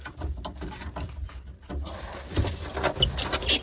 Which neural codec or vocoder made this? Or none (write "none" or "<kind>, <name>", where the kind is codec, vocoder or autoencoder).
vocoder, BigVGAN v2